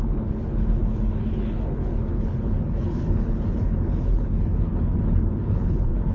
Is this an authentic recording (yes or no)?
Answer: no